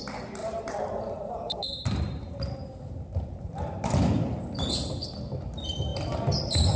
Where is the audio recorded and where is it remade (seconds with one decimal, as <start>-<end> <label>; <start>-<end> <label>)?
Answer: 0.0-0.4 recorded; 0.4-3.8 remade; 3.8-6.8 recorded